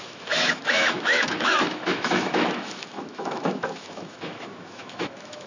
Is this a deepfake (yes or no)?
yes